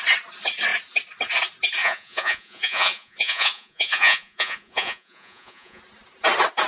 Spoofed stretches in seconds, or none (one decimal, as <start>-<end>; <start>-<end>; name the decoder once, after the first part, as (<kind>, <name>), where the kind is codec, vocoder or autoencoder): 1.8-5.8 (vocoder, Vocos)